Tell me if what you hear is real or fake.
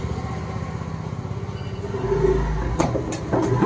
real